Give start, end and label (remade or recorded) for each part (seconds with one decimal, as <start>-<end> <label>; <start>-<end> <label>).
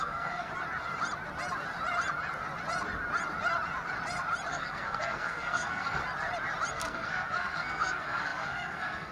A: 0.0-0.5 remade; 0.5-4.5 recorded; 4.5-6.0 remade; 6.0-6.7 recorded; 6.7-9.1 remade